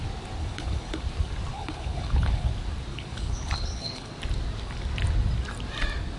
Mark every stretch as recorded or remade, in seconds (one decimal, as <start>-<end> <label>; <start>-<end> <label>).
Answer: 0.0-0.4 recorded; 0.4-1.0 remade; 1.0-1.5 recorded; 1.5-2.5 remade; 2.5-2.9 recorded; 2.9-4.1 remade; 4.1-6.2 recorded